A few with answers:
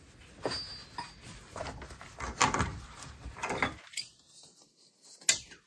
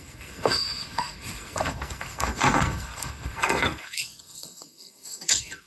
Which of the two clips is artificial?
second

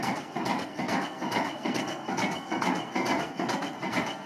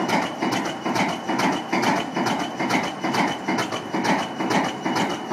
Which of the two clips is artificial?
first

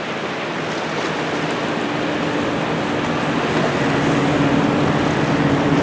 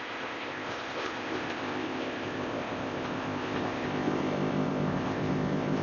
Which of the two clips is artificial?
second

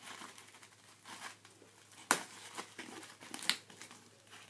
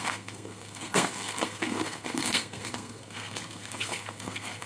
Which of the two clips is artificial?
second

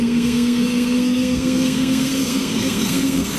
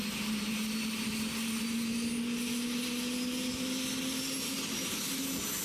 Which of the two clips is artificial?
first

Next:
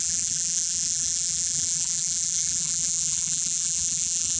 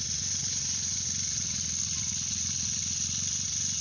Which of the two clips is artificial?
first